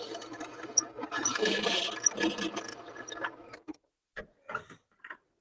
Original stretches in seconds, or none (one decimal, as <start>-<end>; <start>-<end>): 0.0-5.4